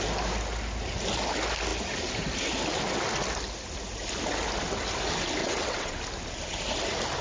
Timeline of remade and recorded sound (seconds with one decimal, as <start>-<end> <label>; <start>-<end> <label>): 0.0-5.4 recorded; 5.4-6.0 remade; 6.0-7.2 recorded